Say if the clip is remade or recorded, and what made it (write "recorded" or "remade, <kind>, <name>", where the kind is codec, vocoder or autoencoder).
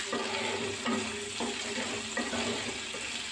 recorded